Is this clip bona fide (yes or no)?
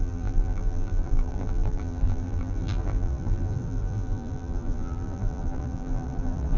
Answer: no